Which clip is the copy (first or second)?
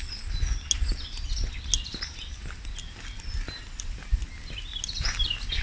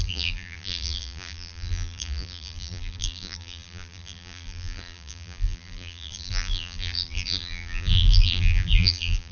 second